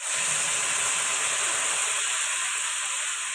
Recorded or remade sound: recorded